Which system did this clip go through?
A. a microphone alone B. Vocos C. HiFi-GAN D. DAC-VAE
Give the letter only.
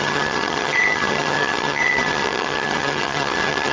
C